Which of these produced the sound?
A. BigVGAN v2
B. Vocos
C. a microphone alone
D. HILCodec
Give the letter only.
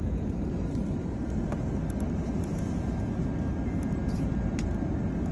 C